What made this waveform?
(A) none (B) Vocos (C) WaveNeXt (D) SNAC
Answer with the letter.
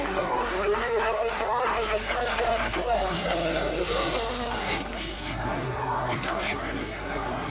D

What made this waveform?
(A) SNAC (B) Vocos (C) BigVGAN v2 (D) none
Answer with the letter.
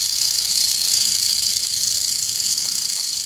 A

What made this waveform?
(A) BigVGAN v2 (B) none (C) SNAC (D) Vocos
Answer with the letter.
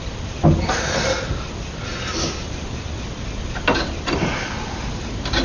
B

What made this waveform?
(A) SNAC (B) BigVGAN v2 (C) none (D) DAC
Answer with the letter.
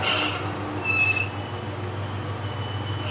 C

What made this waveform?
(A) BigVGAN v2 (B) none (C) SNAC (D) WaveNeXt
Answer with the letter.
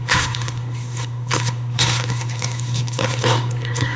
C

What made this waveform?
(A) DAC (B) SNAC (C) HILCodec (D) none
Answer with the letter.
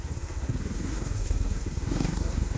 B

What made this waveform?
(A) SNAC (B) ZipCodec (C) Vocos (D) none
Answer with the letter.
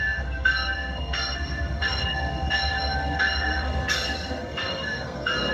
A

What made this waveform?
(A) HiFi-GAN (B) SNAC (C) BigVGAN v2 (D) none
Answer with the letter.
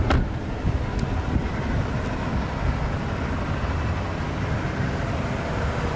D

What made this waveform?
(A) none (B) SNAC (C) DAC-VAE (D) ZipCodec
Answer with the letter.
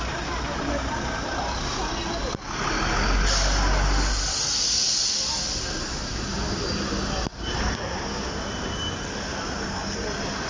A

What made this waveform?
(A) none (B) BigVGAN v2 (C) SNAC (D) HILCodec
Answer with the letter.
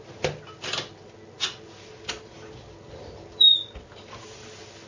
A